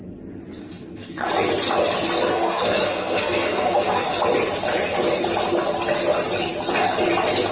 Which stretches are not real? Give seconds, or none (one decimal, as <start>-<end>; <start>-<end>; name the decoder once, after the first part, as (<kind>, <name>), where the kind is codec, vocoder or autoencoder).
0.6-1.3 (codec, SNAC); 2.3-4.2